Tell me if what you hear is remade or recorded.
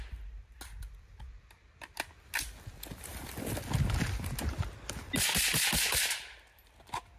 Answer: recorded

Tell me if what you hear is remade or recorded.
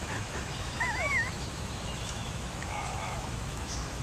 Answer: remade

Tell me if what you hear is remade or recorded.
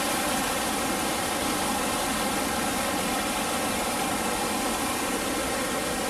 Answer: recorded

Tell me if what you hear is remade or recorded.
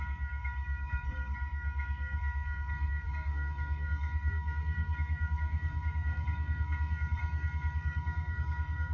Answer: remade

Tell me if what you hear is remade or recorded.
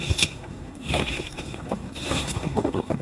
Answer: remade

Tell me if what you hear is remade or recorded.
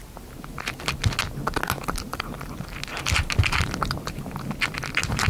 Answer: recorded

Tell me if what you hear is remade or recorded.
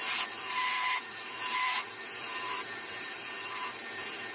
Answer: remade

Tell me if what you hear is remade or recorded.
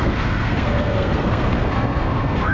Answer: remade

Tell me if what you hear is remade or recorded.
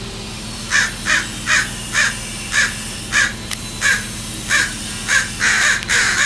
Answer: recorded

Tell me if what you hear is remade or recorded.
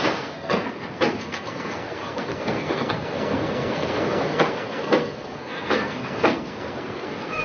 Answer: remade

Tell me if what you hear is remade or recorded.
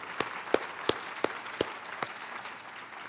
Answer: recorded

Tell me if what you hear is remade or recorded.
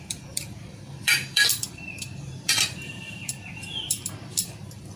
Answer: remade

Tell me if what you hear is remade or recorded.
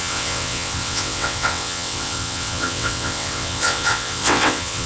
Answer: remade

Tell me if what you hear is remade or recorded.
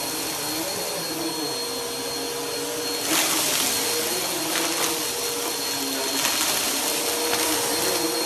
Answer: recorded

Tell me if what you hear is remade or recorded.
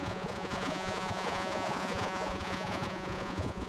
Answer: remade